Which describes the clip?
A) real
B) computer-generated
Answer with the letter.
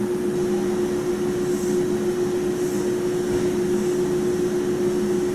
A